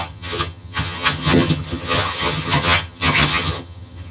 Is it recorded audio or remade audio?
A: remade